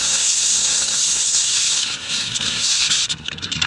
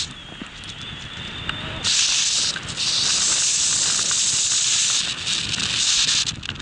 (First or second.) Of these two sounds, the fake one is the first